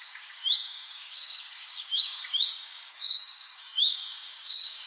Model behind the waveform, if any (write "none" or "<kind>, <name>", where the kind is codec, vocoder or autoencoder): codec, DAC